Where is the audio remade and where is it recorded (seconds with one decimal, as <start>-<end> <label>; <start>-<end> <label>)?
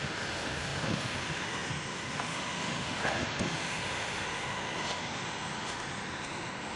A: 0.0-6.8 remade